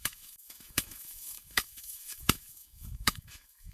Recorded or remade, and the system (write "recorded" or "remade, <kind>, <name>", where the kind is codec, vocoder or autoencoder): remade, autoencoder, DAC-VAE